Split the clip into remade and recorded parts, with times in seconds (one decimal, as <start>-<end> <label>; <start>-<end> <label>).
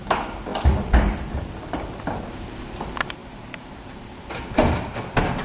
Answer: 0.0-0.5 recorded; 0.5-1.5 remade; 1.5-3.2 recorded; 3.2-4.3 remade; 4.3-5.4 recorded